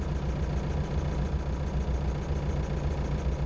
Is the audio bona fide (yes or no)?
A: yes